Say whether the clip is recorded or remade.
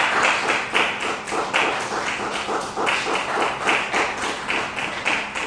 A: recorded